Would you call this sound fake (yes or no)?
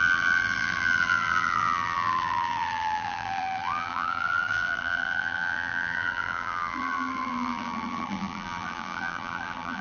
yes